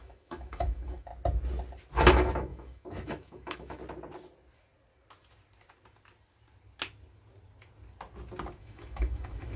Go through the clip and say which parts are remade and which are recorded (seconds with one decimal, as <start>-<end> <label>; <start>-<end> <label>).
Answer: 0.0-1.1 remade; 1.1-2.1 recorded; 2.1-3.8 remade; 3.8-8.6 recorded; 8.6-9.6 remade

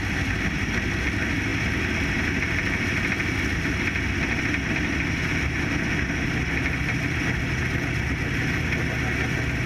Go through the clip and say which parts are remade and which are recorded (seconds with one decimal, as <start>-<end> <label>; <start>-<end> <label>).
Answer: 0.0-9.7 recorded